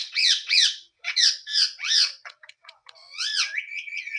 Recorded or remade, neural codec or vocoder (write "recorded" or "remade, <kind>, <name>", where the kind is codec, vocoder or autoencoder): remade, vocoder, WaveNeXt